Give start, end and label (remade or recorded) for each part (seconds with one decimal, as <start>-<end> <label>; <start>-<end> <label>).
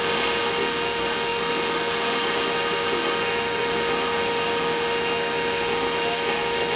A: 0.0-6.8 remade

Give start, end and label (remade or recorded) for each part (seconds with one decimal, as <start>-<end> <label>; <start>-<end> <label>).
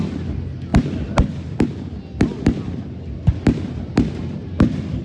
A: 0.0-5.0 recorded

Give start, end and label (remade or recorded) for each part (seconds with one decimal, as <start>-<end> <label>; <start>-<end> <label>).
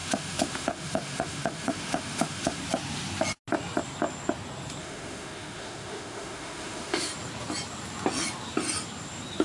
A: 0.0-2.6 remade; 2.6-4.8 recorded; 4.8-7.1 remade; 7.1-9.4 recorded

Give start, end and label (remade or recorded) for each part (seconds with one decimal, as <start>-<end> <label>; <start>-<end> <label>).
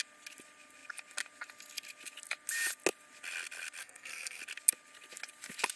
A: 0.0-3.8 recorded; 3.8-4.4 remade; 4.4-5.8 recorded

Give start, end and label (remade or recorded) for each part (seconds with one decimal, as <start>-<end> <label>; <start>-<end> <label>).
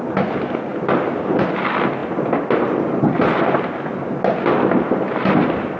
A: 0.0-5.8 recorded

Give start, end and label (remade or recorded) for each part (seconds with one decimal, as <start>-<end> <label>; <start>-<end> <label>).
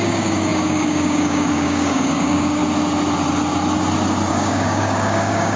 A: 0.0-2.6 remade; 2.6-4.3 recorded; 4.3-5.6 remade